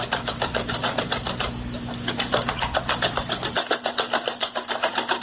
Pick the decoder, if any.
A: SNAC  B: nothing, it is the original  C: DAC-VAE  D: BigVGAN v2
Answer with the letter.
D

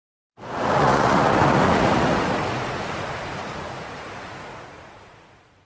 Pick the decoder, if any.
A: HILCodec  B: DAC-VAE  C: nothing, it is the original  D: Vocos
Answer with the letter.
D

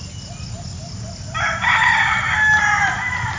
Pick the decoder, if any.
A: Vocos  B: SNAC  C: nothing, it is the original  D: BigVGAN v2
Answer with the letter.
C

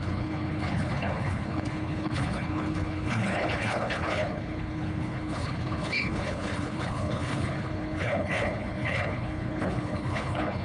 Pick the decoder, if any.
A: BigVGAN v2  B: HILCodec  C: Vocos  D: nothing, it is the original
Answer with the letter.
B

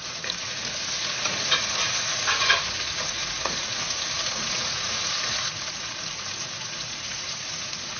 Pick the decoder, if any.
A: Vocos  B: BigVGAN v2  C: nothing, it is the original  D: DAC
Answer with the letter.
A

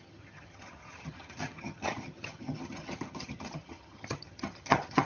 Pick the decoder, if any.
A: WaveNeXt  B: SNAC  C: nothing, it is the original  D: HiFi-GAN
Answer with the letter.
D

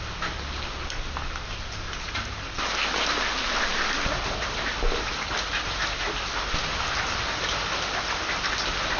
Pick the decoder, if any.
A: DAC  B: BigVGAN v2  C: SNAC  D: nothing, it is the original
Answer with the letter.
D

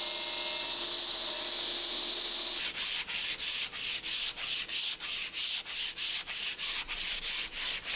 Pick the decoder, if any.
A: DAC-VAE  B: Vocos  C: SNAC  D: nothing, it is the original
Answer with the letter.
D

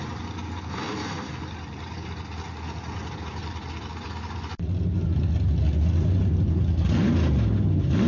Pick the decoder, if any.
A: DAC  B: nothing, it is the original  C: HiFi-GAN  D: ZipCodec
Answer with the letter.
B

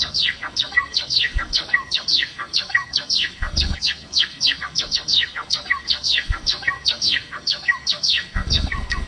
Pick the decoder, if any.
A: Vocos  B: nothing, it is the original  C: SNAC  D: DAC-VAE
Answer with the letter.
C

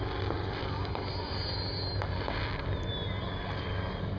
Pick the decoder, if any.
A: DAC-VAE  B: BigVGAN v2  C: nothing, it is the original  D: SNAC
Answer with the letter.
C